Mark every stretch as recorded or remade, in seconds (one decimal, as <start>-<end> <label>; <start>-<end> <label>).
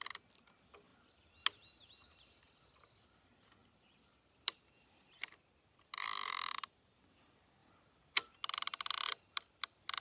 0.0-3.6 recorded; 3.6-6.6 remade; 6.6-7.6 recorded; 7.6-8.3 remade; 8.3-10.0 recorded